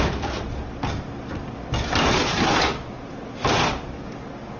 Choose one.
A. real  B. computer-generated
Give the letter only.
A